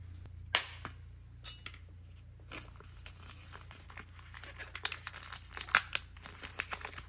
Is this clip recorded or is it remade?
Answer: recorded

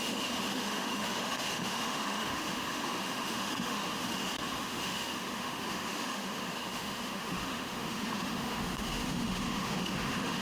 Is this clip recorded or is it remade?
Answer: remade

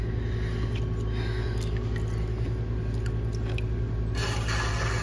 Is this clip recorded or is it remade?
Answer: recorded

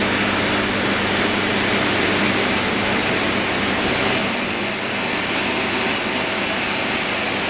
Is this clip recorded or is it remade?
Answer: recorded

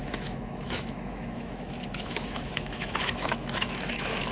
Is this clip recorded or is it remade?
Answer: remade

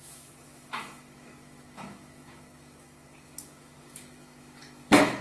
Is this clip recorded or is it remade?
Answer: remade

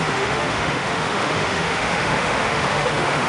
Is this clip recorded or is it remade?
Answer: remade